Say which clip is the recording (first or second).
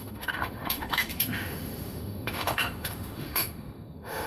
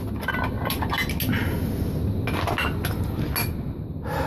second